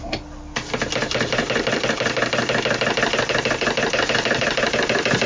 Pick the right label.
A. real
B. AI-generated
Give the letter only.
A